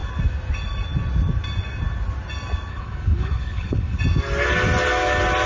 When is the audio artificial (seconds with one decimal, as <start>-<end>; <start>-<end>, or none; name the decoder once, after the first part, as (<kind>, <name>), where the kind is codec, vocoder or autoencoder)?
2.7-4.0 (codec, HILCodec)